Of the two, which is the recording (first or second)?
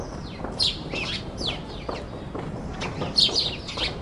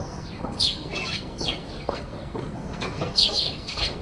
first